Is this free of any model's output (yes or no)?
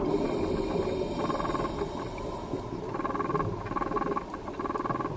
yes